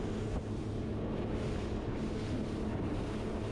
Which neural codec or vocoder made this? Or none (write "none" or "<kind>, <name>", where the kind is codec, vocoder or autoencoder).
none